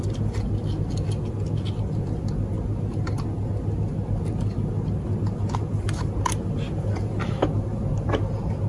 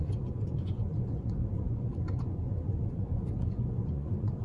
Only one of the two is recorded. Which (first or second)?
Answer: first